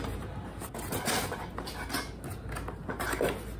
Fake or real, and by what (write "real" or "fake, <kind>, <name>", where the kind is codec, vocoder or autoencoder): real